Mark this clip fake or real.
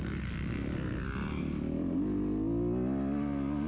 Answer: real